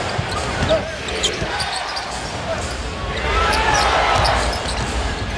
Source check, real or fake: fake